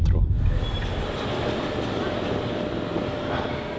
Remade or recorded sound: recorded